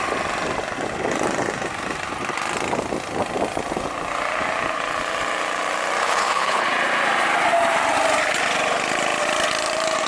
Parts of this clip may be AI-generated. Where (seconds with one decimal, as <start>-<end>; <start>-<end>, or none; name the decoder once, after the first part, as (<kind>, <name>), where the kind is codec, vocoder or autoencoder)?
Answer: 6.0-6.7 (codec, HILCodec)